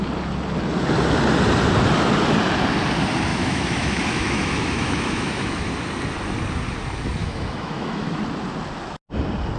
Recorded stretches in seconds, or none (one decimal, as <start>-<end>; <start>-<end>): 0.0-3.3; 5.7-7.2; 8.2-9.6